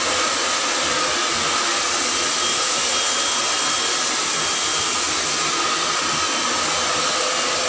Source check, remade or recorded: recorded